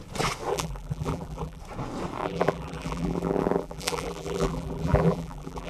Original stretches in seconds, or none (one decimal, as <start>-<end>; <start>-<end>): 0.0-0.5; 1.6-2.2